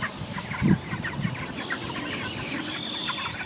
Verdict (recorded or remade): recorded